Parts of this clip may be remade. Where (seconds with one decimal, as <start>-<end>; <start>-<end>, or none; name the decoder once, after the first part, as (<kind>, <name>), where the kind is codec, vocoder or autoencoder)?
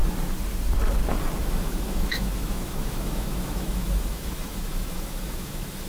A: 1.4-5.9 (autoencoder, DAC-VAE)